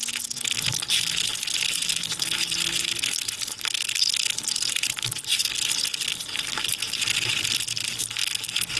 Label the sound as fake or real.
real